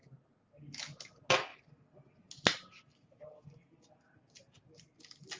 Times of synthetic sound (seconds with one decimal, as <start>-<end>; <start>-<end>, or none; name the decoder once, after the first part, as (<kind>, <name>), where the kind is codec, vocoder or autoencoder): none